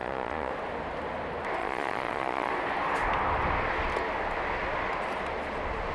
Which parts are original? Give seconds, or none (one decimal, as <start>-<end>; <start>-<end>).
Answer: 0.5-1.6; 2.5-5.9